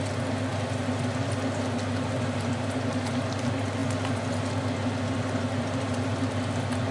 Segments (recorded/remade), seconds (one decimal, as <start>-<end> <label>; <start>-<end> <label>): 0.0-6.9 recorded